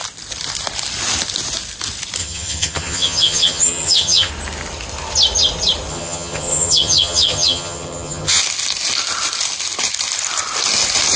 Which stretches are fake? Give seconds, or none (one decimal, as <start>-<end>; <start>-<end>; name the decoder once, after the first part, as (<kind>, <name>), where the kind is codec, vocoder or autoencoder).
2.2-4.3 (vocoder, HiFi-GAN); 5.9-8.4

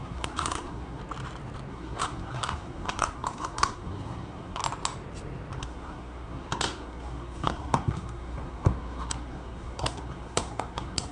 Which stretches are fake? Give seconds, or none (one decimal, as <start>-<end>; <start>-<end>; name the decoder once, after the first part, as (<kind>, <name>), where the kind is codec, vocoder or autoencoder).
0.0-1.0 (codec, SNAC); 1.7-4.6; 5.6-11.1

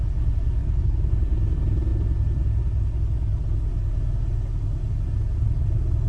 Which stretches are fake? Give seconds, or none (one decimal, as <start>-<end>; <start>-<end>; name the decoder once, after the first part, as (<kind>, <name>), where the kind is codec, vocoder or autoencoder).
0.6-1.1 (codec, HILCodec)

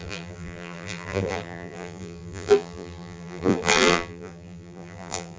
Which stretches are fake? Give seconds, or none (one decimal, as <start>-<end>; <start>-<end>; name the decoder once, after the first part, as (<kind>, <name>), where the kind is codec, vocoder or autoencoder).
0.0-5.4 (vocoder, BigVGAN v2)

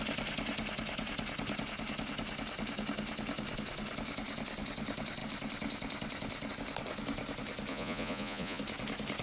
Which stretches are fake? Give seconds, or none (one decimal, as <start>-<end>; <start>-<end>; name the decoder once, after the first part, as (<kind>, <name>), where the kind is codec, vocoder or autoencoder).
7.7-8.6 (vocoder, Vocos)

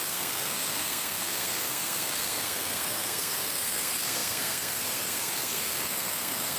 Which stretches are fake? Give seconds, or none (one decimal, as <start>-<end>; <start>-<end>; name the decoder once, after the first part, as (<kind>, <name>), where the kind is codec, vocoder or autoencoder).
0.0-6.6 (codec, SNAC)

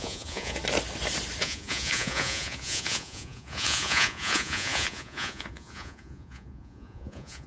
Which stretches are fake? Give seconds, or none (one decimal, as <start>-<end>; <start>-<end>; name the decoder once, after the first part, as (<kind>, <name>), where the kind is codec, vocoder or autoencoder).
0.0-0.6 (vocoder, Vocos); 1.4-7.5

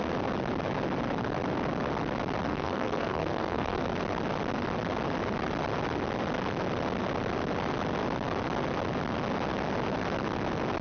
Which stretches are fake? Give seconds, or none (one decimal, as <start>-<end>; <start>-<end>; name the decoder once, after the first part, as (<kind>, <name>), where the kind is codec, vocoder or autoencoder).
2.5-3.8 (codec, SNAC)